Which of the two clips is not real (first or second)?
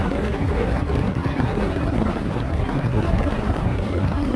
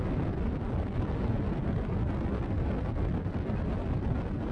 first